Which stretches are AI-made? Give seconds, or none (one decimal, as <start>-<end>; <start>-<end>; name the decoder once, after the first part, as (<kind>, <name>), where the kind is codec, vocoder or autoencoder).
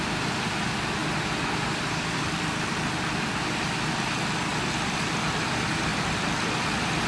1.0-4.1 (vocoder, BigVGAN v2); 4.5-5.1; 5.9-6.5